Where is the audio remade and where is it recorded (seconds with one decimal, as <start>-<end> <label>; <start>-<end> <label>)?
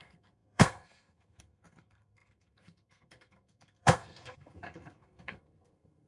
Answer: 0.0-6.1 remade